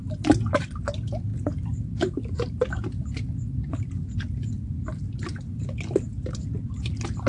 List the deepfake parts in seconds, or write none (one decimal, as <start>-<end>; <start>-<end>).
none